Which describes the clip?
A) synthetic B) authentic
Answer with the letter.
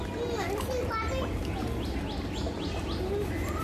B